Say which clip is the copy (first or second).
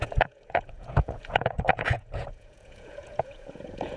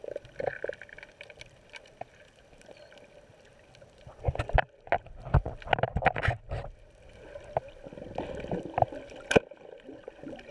first